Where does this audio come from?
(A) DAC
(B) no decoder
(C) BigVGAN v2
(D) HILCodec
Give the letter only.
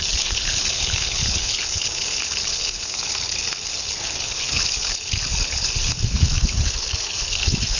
D